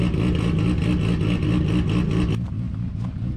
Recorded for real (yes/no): yes